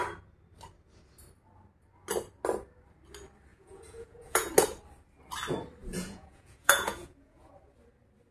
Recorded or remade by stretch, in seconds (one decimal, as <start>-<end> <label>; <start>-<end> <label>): 0.0-3.5 recorded; 3.5-4.5 remade; 4.5-5.8 recorded; 5.8-7.5 remade; 7.5-8.3 recorded